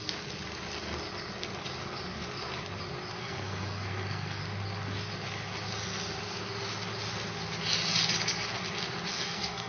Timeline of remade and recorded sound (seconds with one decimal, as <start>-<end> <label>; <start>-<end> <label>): 0.0-3.2 recorded; 3.2-4.4 remade; 4.4-9.1 recorded; 9.1-9.7 remade